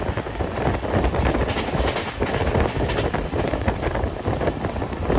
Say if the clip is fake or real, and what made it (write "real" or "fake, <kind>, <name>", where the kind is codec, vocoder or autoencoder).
real